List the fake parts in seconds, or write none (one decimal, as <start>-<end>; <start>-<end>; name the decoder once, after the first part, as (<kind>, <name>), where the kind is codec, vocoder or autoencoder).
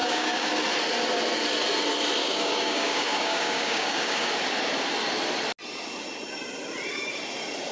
0.0-0.5 (codec, DAC); 2.2-4.3